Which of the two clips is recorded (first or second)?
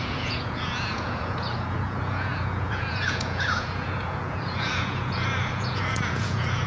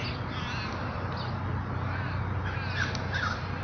second